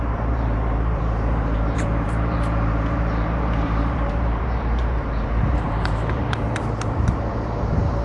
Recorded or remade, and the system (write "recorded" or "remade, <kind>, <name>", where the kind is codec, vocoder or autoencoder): remade, vocoder, BigVGAN v2